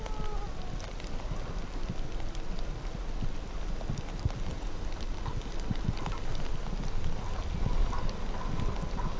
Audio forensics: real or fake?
real